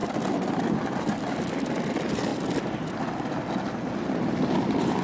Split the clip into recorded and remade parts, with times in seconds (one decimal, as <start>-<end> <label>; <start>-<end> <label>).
0.0-2.3 remade; 2.3-4.4 recorded; 4.4-5.0 remade